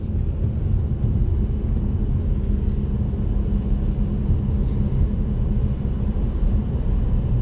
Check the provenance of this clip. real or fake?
real